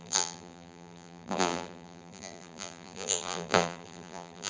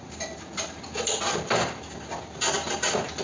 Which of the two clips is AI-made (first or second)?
first